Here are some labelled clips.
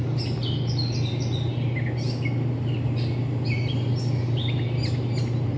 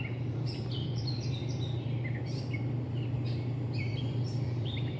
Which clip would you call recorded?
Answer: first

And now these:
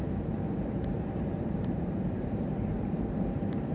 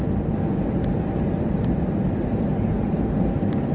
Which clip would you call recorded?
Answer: second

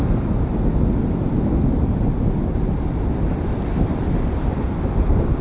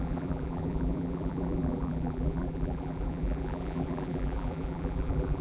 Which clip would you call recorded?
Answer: first